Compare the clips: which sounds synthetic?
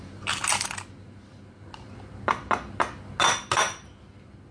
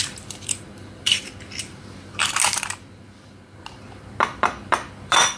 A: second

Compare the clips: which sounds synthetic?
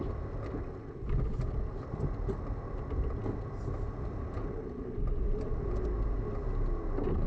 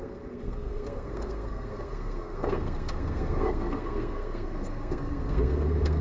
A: second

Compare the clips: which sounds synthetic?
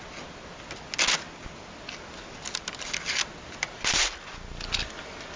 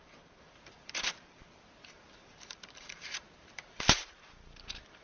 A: second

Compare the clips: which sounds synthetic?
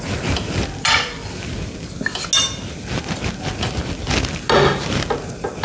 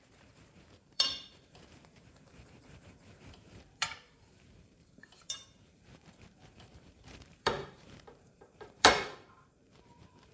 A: second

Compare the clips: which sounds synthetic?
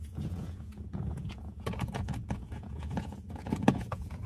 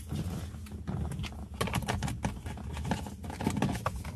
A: first